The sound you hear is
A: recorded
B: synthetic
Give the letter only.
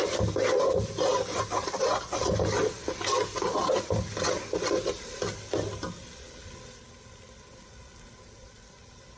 A